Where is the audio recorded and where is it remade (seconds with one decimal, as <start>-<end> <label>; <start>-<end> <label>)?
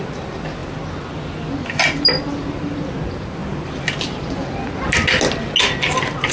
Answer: 0.0-6.3 recorded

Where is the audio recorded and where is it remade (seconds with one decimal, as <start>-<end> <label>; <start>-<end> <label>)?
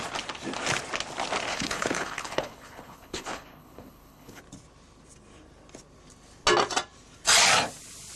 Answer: 0.0-1.5 recorded; 1.5-4.4 remade; 4.4-8.2 recorded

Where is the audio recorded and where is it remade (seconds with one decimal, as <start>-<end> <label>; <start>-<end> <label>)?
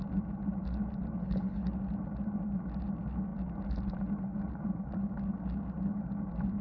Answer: 0.0-1.2 recorded; 1.2-1.7 remade; 1.7-6.6 recorded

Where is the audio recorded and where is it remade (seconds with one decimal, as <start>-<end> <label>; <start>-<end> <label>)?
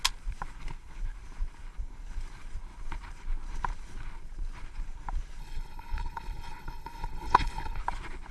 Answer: 0.0-5.4 recorded; 5.4-7.8 remade; 7.8-8.3 recorded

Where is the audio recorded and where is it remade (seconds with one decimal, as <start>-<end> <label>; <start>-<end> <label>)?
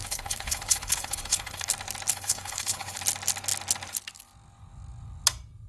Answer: 0.0-1.7 remade; 1.7-2.1 recorded; 2.1-3.0 remade; 3.0-5.7 recorded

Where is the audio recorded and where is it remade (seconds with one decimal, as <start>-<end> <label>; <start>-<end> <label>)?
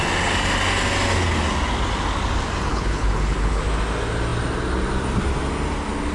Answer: 0.0-2.7 recorded; 2.7-3.6 remade; 3.6-6.1 recorded